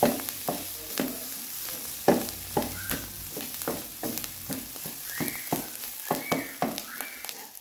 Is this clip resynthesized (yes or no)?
no